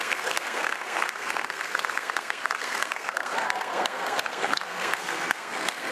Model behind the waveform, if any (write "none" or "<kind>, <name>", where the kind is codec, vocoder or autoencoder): codec, SNAC